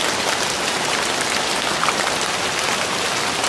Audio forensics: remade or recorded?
recorded